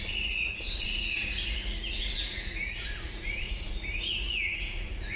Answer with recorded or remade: remade